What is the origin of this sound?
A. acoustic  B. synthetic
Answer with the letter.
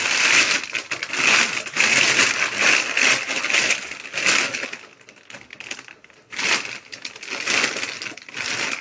A